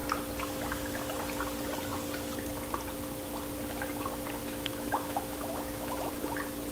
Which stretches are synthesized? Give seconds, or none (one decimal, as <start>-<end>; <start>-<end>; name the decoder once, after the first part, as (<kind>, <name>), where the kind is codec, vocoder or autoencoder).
4.4-6.1 (autoencoder, DAC-VAE)